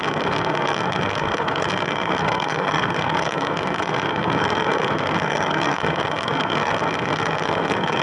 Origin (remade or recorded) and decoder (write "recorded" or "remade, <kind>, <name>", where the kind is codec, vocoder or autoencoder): remade, codec, SNAC